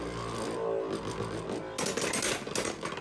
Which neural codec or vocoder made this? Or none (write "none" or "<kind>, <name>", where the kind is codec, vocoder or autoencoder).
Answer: none